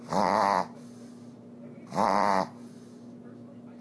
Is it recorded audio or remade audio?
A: recorded